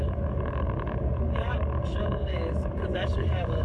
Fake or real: fake